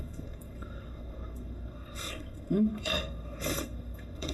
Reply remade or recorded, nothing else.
remade